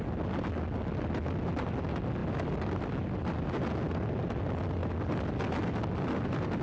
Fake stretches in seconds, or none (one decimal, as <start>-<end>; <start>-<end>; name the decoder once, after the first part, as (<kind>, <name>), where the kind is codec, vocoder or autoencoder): none